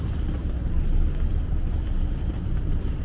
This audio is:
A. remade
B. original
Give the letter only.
A